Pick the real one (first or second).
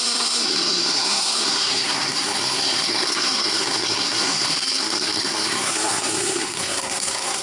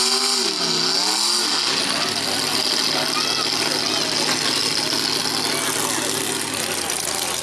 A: second